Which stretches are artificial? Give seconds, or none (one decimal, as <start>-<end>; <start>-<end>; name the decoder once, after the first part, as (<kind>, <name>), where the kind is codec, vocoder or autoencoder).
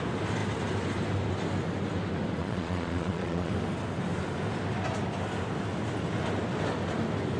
2.4-3.5 (vocoder, Vocos)